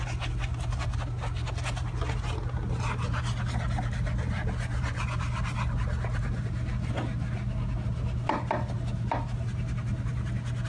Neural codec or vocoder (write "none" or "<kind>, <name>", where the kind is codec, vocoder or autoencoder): none